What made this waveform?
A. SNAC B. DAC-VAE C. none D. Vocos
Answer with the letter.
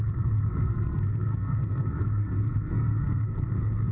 A